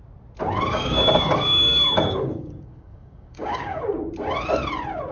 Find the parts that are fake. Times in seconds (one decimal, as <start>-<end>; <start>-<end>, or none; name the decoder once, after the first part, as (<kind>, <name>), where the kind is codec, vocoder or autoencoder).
0.7-3.8 (codec, DAC)